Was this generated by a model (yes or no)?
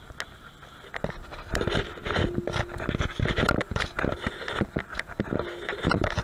no